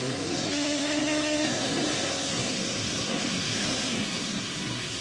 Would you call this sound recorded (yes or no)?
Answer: no